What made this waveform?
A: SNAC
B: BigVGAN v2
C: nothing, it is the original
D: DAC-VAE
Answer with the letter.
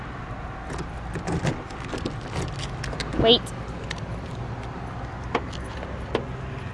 C